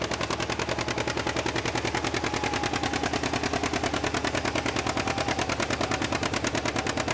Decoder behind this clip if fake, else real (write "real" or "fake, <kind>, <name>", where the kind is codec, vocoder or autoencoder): real